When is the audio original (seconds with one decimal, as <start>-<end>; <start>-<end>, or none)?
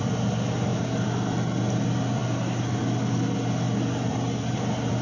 0.7-1.6; 2.2-4.1